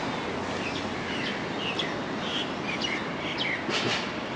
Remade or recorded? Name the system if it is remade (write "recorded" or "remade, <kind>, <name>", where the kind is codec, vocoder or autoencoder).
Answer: recorded